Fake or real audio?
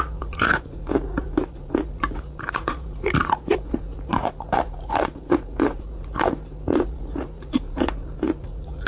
fake